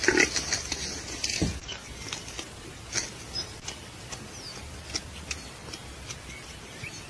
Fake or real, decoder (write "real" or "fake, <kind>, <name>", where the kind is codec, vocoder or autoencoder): real